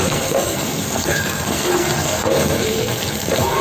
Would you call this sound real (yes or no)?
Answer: no